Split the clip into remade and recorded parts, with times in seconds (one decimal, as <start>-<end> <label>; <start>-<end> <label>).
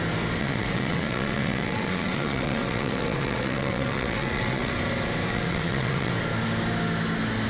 0.0-0.4 recorded; 0.4-4.7 remade; 4.7-5.3 recorded; 5.3-6.1 remade; 6.1-7.5 recorded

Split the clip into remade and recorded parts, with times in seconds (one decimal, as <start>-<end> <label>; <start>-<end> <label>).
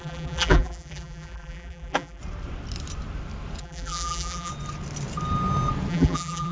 0.0-2.2 remade; 2.2-3.6 recorded; 3.6-4.5 remade; 4.5-5.9 recorded; 5.9-6.5 remade